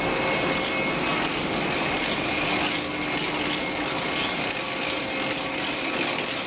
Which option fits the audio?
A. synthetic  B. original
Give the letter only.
B